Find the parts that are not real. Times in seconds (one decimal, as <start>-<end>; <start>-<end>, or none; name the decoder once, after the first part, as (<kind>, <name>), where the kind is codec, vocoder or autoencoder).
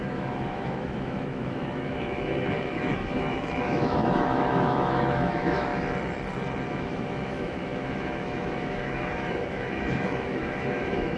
0.0-5.7 (autoencoder, DAC-VAE); 6.7-11.2